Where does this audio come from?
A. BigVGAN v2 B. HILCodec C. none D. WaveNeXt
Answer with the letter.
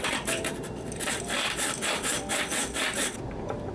A